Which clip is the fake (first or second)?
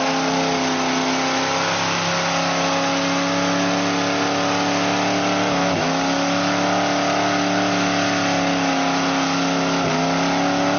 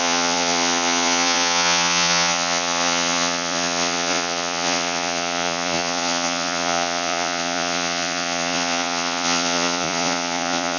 second